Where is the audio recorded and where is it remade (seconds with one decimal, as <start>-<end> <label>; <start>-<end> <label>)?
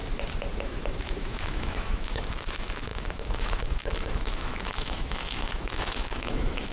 0.0-0.6 recorded; 0.6-6.7 remade